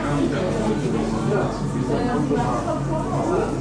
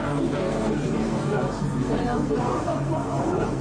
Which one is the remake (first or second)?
second